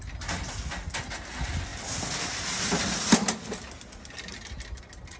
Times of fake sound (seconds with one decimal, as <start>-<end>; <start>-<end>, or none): none